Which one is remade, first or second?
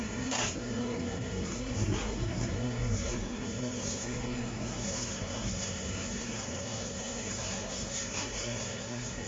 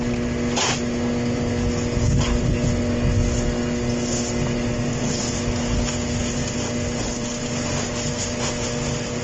first